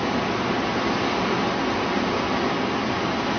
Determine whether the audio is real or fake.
real